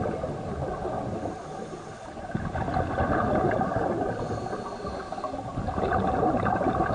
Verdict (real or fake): real